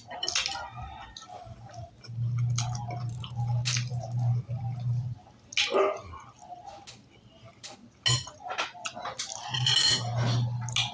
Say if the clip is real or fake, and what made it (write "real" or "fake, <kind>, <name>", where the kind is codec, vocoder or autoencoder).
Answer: real